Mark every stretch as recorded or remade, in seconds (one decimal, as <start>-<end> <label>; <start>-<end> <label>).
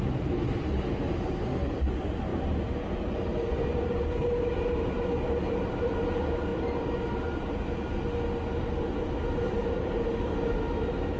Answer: 0.0-11.2 recorded